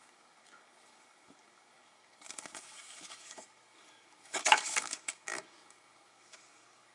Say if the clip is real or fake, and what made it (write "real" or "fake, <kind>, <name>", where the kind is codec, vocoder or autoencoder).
fake, codec, DAC